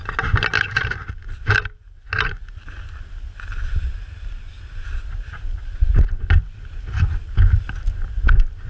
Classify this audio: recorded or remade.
recorded